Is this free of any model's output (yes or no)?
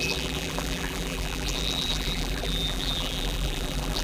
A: no